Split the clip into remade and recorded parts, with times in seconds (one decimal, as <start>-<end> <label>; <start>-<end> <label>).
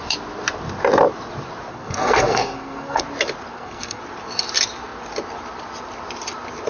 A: 0.0-1.7 recorded; 1.7-3.0 remade; 3.0-3.5 recorded; 3.5-4.0 remade; 4.0-6.7 recorded